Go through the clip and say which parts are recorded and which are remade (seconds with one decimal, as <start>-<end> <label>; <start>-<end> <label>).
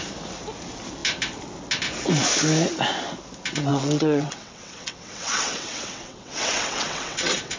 0.0-3.7 recorded; 3.7-7.6 remade